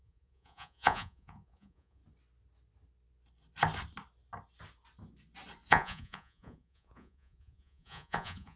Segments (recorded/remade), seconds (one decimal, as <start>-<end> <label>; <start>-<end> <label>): 0.0-2.0 remade; 2.0-5.7 recorded; 5.7-8.6 remade